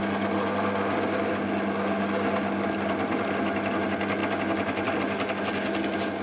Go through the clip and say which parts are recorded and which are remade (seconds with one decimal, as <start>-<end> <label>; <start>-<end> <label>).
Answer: 0.0-6.2 recorded